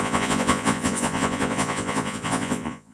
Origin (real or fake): fake